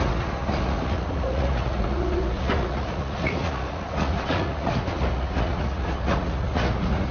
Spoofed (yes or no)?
yes